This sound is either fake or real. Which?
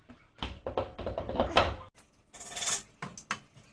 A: real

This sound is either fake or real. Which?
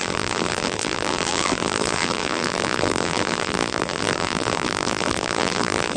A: fake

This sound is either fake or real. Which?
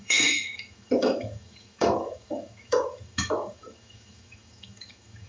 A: fake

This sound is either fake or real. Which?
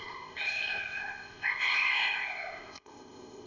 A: fake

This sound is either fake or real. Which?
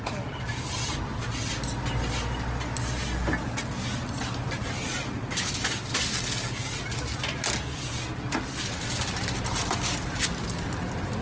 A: real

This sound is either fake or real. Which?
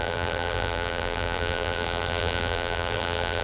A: fake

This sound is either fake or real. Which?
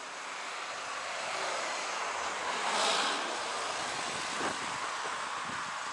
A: real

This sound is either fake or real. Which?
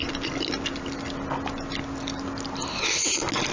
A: real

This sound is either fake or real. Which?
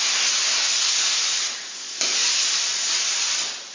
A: real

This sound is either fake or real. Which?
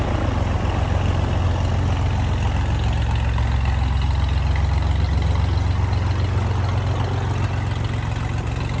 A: real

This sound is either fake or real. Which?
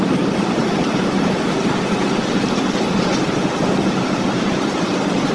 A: real